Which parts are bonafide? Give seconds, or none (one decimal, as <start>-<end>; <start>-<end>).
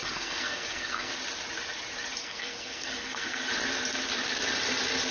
1.1-2.2; 3.4-5.1